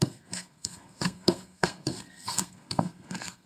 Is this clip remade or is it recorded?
remade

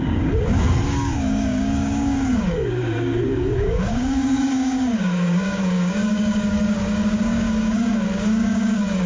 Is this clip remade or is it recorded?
remade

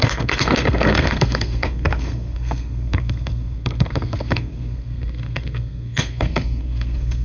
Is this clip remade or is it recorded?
remade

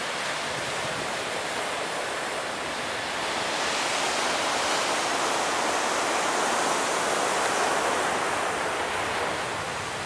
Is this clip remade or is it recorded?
recorded